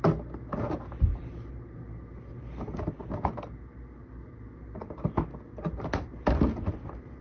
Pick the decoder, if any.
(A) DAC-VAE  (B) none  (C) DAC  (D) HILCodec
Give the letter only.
B